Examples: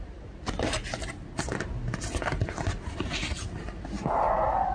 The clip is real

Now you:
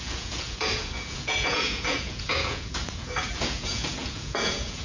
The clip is fake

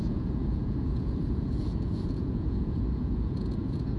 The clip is fake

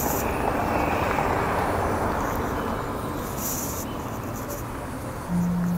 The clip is real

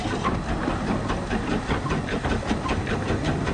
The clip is real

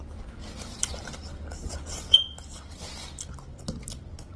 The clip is real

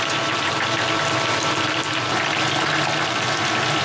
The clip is real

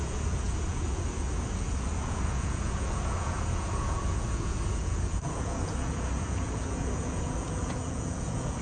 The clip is fake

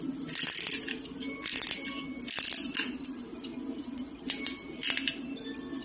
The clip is real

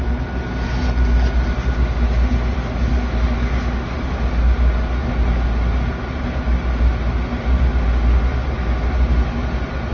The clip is real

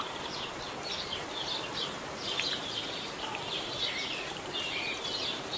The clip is real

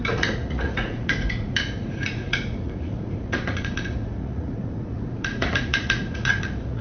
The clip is fake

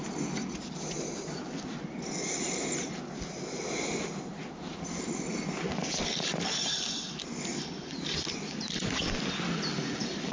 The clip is real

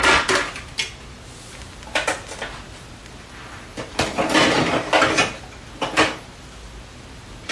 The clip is real